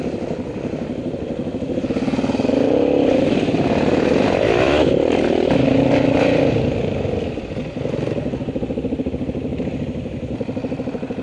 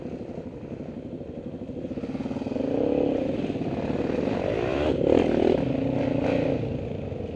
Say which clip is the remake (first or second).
first